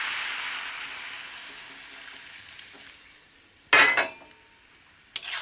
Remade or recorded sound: recorded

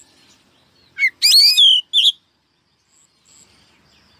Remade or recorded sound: recorded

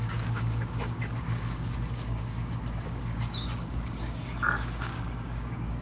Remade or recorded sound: remade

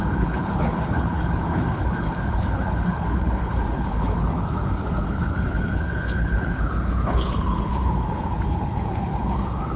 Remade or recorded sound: remade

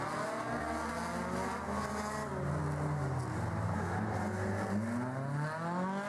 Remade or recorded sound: recorded